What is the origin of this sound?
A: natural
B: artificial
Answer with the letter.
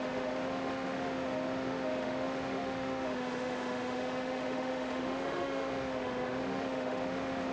B